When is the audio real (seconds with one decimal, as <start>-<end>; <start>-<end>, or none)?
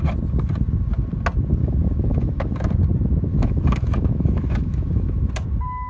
0.0-1.6; 2.7-3.3; 5.3-5.9